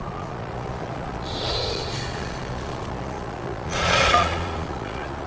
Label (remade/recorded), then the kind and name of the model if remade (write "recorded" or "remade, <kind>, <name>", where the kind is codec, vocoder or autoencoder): remade, vocoder, Vocos